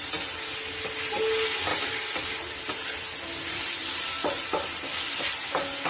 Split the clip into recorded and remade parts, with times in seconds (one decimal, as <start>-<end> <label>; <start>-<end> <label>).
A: 0.0-1.7 recorded; 1.7-5.2 remade; 5.2-5.9 recorded